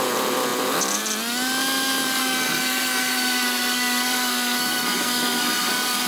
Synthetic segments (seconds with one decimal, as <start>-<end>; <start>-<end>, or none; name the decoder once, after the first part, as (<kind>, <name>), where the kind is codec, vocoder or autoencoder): 2.2-6.1 (codec, SNAC)